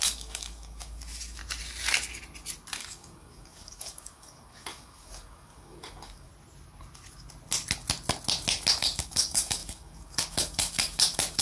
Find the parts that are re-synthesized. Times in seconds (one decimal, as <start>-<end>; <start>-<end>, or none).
0.0-1.4; 2.8-6.3; 8.7-11.4